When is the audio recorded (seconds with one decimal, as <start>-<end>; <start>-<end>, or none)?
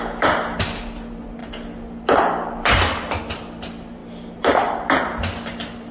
0.0-5.9